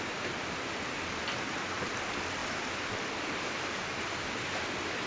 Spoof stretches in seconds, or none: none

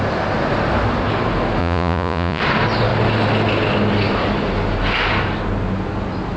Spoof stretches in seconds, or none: 1.6-2.4 (vocoder, Vocos)